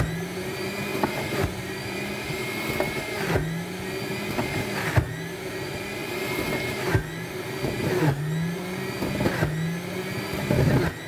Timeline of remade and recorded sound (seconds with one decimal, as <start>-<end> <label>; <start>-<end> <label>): 0.0-0.9 recorded; 0.9-2.1 remade; 2.1-11.1 recorded

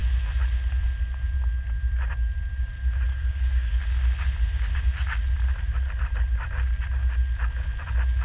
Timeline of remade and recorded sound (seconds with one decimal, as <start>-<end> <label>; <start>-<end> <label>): 0.0-3.1 recorded; 3.1-3.8 remade; 3.8-8.2 recorded